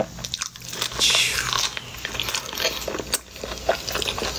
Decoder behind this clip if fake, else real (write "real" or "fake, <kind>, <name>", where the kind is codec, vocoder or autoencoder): real